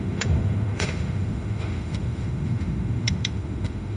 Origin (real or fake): fake